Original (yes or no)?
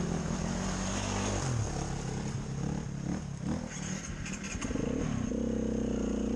yes